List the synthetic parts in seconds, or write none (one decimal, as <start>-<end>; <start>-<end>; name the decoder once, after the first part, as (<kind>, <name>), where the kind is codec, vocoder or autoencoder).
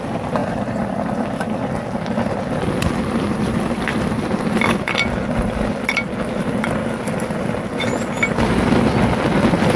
0.4-4.9 (vocoder, BigVGAN v2)